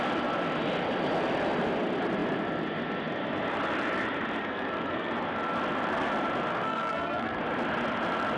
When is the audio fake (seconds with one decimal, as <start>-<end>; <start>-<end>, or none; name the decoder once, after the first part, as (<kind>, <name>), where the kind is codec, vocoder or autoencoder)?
4.4-5.1 (codec, SNAC); 6.5-7.4